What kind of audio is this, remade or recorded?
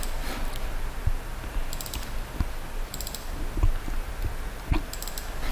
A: recorded